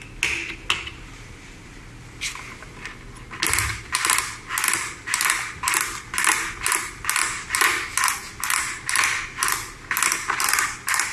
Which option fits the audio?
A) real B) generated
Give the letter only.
A